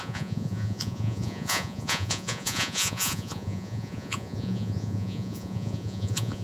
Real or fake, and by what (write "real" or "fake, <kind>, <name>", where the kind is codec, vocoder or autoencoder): fake, vocoder, Vocos